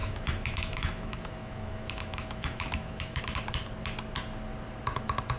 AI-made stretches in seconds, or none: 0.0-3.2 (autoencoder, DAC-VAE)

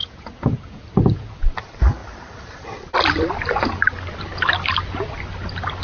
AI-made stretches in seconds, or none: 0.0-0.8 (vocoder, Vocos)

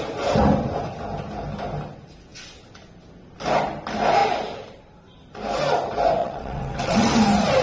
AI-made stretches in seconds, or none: 6.2-7.1 (vocoder, WaveNeXt)

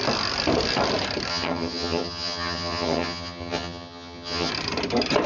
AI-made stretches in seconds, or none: 1.3-4.5 (vocoder, HiFi-GAN)